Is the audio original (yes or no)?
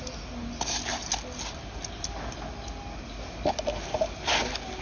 yes